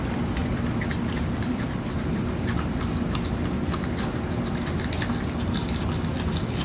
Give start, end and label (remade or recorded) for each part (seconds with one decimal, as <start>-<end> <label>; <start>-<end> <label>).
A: 0.0-0.4 recorded; 0.4-2.4 remade; 2.4-6.6 recorded